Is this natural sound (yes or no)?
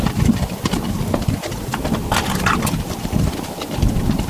yes